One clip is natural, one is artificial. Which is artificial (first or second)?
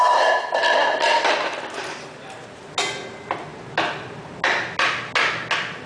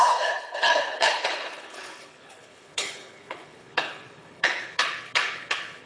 second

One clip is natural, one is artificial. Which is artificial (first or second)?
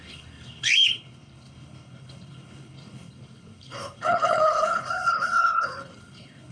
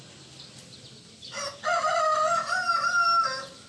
first